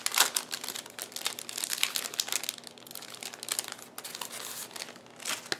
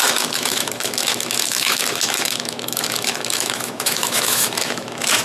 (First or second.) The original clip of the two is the first